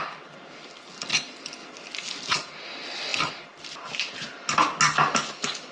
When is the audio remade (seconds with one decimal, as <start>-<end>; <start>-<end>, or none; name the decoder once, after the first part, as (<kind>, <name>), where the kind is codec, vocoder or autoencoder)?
none